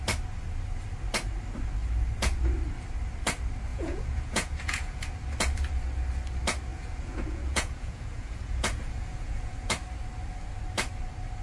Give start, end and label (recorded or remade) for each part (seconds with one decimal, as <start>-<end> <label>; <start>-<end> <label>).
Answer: 0.0-3.7 recorded; 3.7-5.1 remade; 5.1-6.7 recorded; 6.7-9.7 remade; 9.7-11.4 recorded

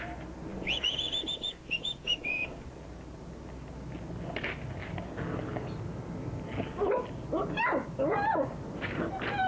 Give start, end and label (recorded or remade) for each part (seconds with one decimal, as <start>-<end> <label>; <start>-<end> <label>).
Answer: 0.0-0.5 recorded; 0.5-2.7 remade; 2.7-9.5 recorded

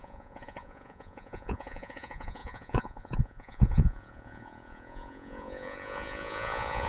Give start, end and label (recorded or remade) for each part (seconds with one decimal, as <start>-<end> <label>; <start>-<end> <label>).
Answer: 0.0-6.9 remade

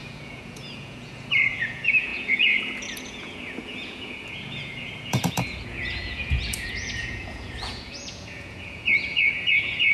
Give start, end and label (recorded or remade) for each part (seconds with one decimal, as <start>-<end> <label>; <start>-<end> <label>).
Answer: 0.0-9.9 remade